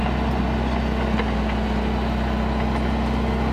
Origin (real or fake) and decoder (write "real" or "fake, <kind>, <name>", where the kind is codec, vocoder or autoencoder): real